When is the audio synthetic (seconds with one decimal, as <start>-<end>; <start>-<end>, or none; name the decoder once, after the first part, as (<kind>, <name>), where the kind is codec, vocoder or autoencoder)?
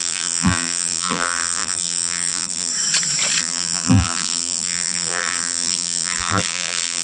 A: 0.0-2.7 (vocoder, BigVGAN v2); 3.4-7.0